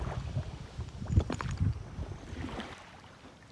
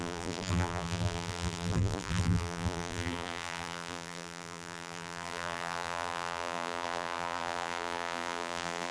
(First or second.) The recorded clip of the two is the first